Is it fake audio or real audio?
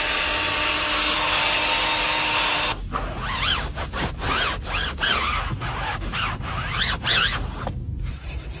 real